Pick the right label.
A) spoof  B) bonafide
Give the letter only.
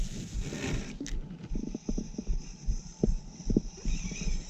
B